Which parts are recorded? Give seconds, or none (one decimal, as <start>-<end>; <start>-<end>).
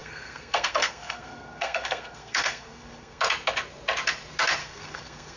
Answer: 3.2-4.6